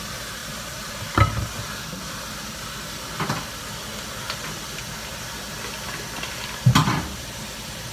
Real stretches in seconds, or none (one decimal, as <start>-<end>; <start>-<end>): 0.0-0.4; 0.9-7.9